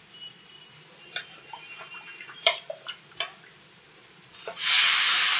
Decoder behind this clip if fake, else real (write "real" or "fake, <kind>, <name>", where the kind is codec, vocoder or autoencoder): fake, vocoder, BigVGAN v2